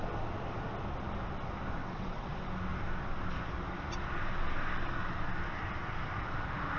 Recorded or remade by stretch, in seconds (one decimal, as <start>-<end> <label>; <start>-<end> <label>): 0.0-1.8 recorded; 1.8-2.3 remade; 2.3-6.8 recorded

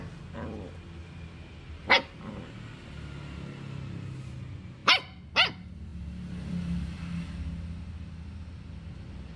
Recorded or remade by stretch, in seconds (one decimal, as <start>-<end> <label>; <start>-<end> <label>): 0.0-9.4 recorded

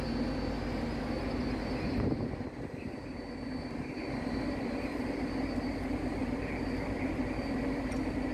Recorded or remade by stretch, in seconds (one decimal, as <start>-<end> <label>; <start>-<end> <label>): 0.0-8.3 recorded